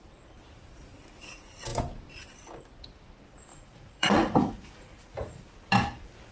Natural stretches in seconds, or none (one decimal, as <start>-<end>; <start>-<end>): 0.0-3.5; 5.1-6.3